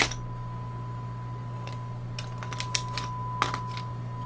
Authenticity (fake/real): real